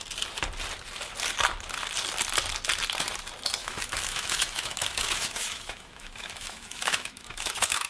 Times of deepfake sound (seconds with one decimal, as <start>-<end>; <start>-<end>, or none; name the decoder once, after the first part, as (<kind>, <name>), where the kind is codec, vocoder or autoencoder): 3.6-7.9 (autoencoder, DAC-VAE)